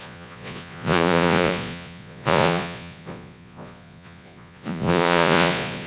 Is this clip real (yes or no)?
no